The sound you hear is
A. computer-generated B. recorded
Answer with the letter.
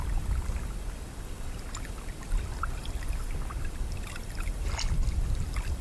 B